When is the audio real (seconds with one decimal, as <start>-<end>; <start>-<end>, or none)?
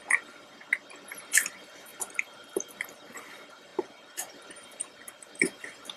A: 0.6-1.5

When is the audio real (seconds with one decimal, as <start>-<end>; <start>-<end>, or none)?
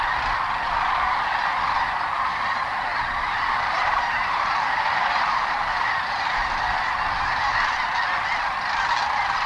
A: 0.0-2.3; 6.1-9.5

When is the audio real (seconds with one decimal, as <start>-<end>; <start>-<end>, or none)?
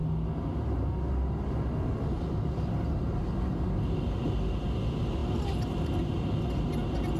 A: 0.0-7.2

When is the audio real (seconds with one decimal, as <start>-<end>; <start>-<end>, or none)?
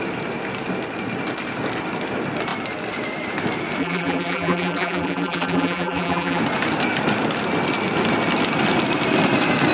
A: 0.0-3.8; 6.4-9.7